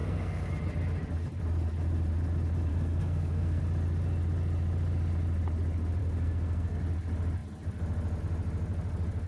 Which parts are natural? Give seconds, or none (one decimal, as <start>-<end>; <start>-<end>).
0.5-2.7; 3.6-6.0; 6.8-9.3